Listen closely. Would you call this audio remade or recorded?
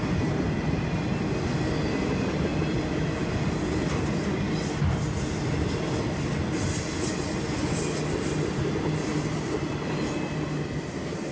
recorded